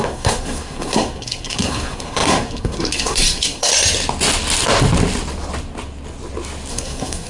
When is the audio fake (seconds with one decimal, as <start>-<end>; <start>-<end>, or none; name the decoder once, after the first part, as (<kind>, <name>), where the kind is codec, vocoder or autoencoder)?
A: 0.0-3.7 (codec, SNAC); 6.7-7.3